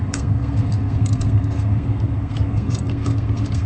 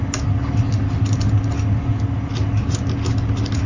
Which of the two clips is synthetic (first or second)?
first